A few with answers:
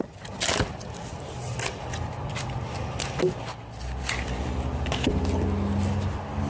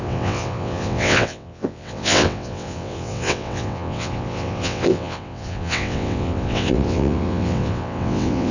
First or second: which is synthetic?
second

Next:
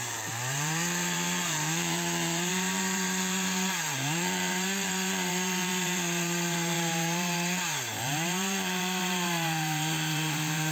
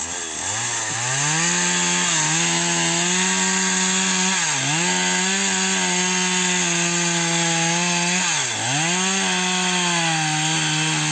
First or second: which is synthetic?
first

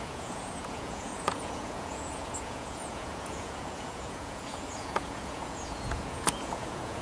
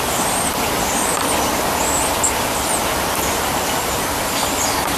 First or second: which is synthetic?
first